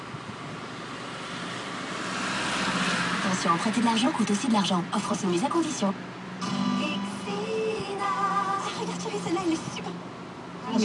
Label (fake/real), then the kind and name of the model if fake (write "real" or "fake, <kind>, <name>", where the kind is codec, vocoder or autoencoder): real